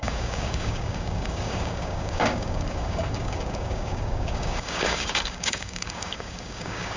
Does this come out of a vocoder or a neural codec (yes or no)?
yes